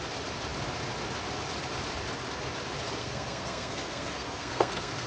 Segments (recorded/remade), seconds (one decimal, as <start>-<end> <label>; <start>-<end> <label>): 0.0-3.0 recorded; 3.0-5.1 remade